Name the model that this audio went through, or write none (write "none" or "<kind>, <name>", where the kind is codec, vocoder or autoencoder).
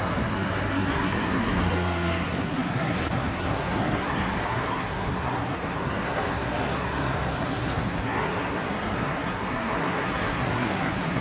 codec, SNAC